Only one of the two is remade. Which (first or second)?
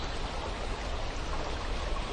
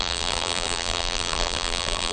second